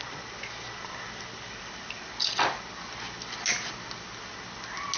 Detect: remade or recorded recorded